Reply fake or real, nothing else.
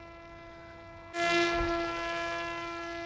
real